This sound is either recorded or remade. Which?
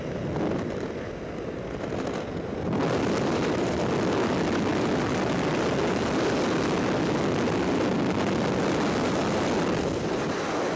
recorded